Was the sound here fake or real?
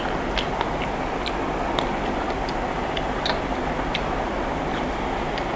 real